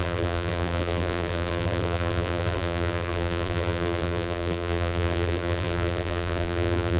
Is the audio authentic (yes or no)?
no